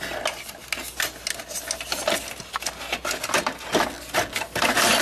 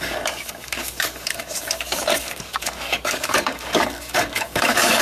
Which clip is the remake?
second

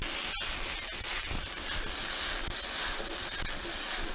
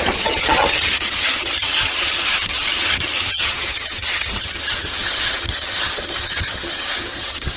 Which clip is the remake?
second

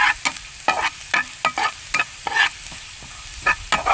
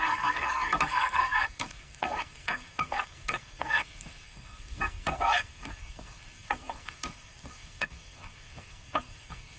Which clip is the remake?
second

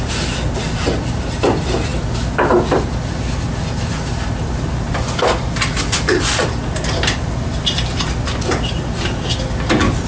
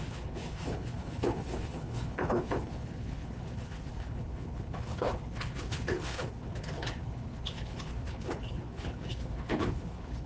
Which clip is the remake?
second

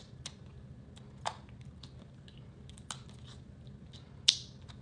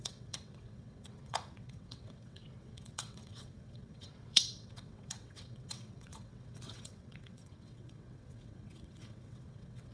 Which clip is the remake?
second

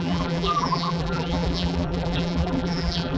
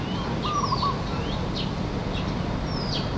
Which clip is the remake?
first